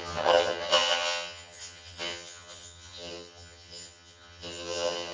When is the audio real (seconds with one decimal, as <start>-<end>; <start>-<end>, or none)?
none

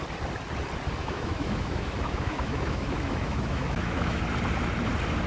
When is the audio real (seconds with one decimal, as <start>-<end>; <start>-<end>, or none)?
0.0-1.0; 4.2-5.3

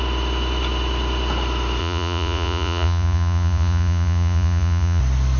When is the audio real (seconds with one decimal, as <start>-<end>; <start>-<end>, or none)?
0.0-1.8; 5.0-5.4

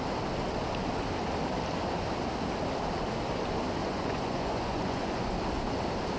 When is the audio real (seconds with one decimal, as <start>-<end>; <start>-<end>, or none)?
0.0-3.8; 5.3-6.2

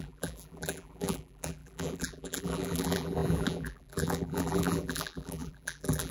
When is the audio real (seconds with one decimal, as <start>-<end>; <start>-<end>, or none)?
none

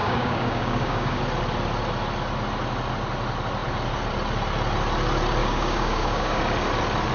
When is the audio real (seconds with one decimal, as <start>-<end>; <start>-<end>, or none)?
1.2-5.4; 6.4-7.1

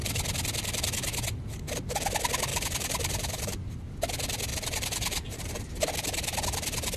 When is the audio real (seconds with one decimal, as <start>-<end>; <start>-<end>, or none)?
0.0-2.5; 3.8-4.5; 5.9-7.0